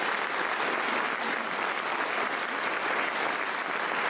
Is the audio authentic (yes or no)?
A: yes